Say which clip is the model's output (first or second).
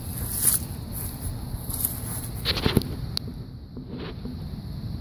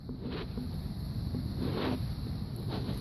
second